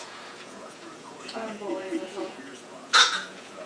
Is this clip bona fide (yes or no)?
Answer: no